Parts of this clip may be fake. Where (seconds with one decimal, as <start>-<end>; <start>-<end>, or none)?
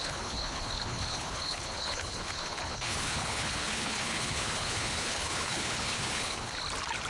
0.0-6.5